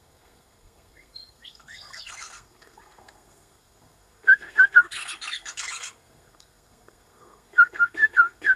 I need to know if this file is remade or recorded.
remade